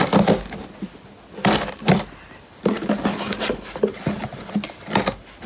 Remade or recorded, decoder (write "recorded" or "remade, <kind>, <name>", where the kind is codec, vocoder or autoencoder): recorded